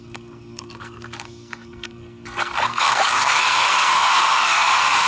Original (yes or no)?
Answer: no